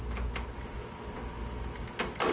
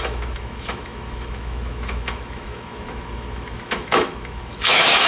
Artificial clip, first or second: second